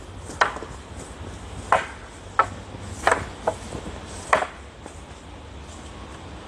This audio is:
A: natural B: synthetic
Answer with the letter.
A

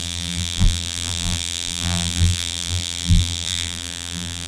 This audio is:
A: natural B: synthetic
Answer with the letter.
B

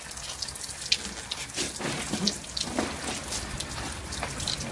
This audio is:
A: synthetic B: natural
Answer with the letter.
B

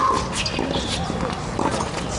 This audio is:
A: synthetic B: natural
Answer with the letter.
B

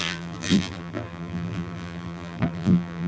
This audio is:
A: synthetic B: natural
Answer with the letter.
A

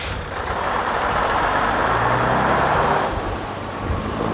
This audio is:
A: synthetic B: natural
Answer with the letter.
A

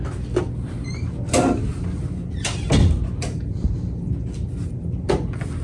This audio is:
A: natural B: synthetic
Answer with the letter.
A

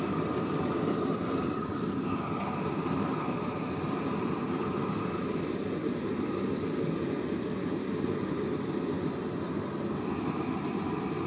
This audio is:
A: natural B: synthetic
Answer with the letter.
B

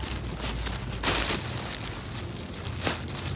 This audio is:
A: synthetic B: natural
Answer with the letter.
B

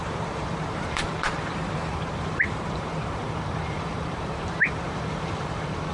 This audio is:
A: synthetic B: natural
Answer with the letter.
A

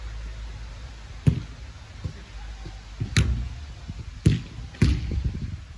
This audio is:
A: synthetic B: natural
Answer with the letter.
B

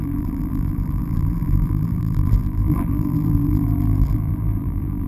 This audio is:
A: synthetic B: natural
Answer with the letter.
A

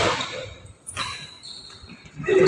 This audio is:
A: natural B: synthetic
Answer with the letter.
A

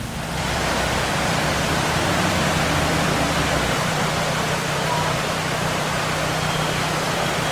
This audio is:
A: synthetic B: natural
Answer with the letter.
A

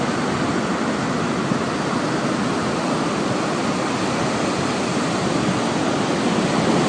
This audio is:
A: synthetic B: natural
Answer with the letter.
B